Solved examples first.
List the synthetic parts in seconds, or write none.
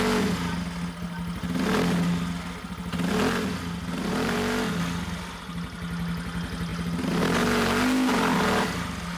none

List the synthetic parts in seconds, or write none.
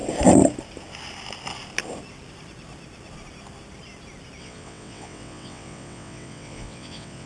4.4-7.3 (vocoder, WaveNeXt)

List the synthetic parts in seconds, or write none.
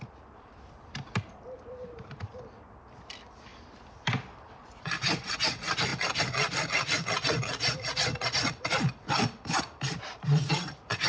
0.0-5.9 (vocoder, BigVGAN v2); 9.6-11.1